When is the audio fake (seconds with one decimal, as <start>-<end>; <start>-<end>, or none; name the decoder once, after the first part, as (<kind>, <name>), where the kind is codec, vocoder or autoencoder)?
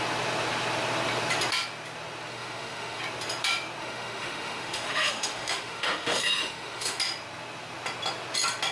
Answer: 2.3-3.0 (autoencoder, DAC-VAE); 3.8-7.0